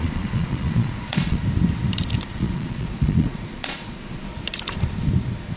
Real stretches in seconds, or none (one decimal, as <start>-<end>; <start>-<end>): 1.4-2.3; 4.3-5.6

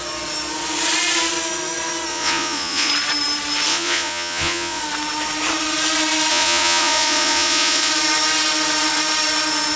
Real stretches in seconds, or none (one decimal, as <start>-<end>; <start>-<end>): 0.0-2.1; 2.9-3.7; 4.8-6.3; 7.9-9.8

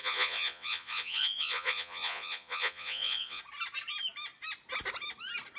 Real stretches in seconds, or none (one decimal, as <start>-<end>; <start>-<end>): 3.4-5.6

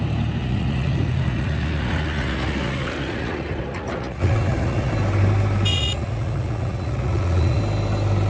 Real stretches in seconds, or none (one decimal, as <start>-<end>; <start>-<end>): 0.0-0.4; 4.9-5.7; 7.6-8.3

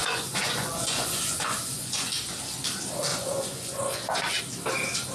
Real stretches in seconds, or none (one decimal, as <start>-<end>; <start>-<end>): 2.1-3.1; 4.4-5.1

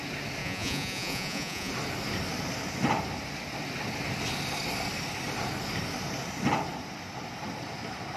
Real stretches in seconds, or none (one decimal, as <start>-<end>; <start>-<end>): 0.0-0.4; 1.7-8.2

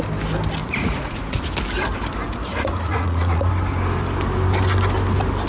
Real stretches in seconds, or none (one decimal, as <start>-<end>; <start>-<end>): 0.0-0.6; 1.4-2.5; 3.5-5.5

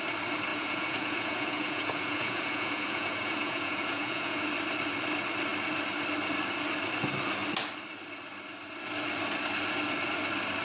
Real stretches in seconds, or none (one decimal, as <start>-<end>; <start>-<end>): 0.0-0.5; 4.4-10.6